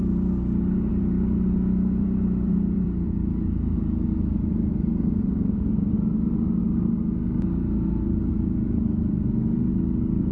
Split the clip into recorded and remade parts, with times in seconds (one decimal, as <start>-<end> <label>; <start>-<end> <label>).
0.0-0.9 recorded; 0.9-3.1 remade; 3.1-10.3 recorded